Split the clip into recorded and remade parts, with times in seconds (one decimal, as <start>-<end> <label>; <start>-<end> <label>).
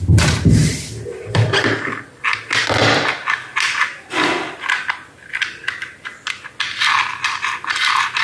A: 0.0-0.6 recorded; 0.6-2.4 remade; 2.4-8.2 recorded